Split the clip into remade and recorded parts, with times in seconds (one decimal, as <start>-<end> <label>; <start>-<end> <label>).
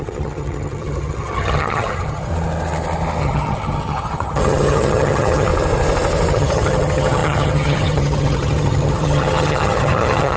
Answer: 0.0-2.3 remade; 2.3-3.2 recorded; 3.2-5.5 remade; 5.5-6.3 recorded; 6.3-10.4 remade